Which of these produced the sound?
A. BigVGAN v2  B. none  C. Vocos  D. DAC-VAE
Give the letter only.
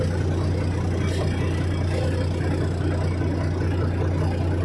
B